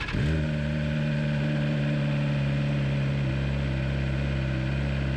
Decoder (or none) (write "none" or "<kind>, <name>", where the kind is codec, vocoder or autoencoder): none